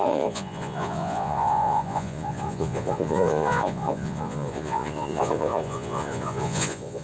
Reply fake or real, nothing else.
fake